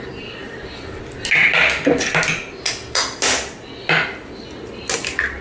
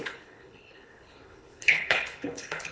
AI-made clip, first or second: second